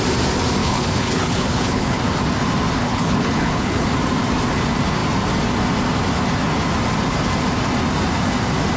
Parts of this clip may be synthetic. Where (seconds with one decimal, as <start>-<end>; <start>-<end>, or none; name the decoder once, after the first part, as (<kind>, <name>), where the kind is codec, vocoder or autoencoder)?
0.6-2.0 (codec, HILCodec); 2.8-3.9